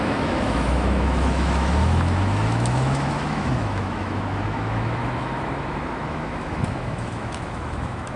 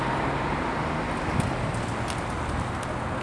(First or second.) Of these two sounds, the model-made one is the first